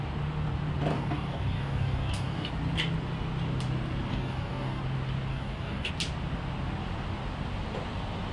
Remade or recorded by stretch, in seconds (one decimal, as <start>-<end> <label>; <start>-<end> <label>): 0.0-0.9 recorded; 0.9-2.5 remade; 2.5-4.1 recorded; 4.1-4.8 remade; 4.8-5.3 recorded; 5.3-5.9 remade; 5.9-8.3 recorded